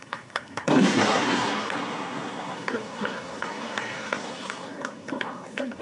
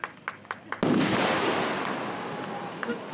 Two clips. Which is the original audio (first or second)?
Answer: second